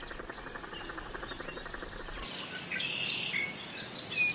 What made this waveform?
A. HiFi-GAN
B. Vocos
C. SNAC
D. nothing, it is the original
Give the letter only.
D